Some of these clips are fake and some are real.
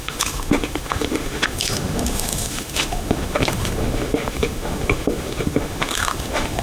fake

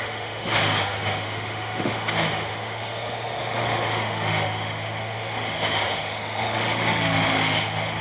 fake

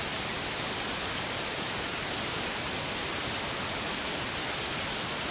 real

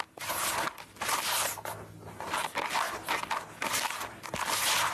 real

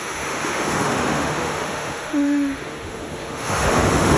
fake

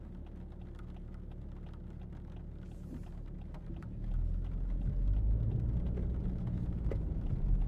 real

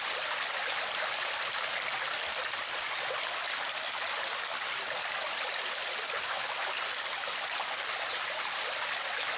real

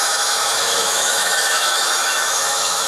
fake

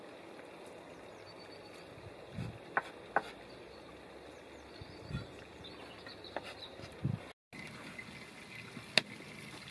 real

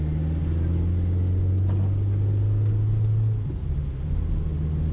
real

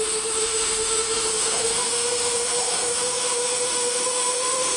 fake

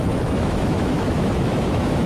fake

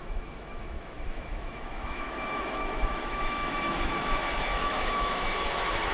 fake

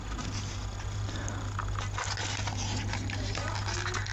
real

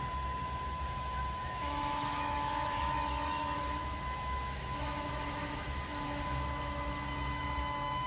fake